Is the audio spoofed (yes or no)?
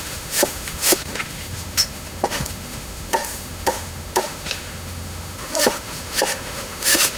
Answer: yes